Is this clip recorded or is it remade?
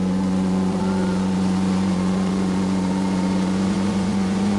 remade